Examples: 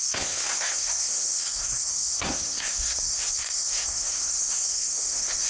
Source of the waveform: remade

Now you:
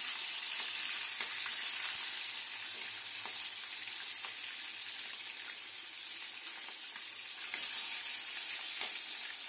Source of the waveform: recorded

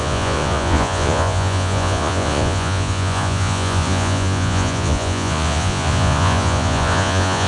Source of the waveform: remade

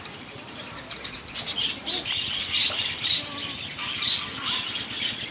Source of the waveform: remade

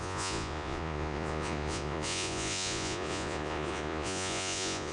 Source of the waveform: remade